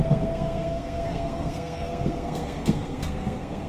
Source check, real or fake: fake